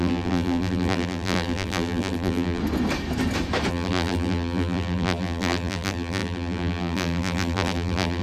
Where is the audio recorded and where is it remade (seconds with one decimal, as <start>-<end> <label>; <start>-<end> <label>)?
0.0-2.6 remade; 2.6-3.7 recorded; 3.7-8.2 remade